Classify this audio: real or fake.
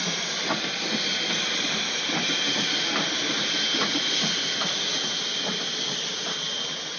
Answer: real